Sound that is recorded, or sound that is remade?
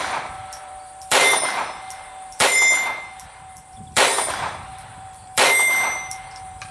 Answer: remade